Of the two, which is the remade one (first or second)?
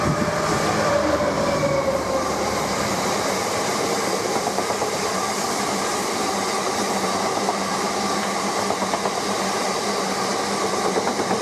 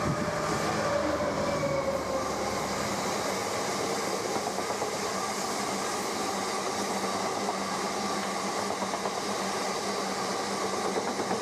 first